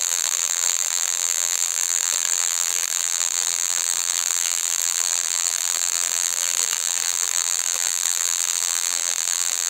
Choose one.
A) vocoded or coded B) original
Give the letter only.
A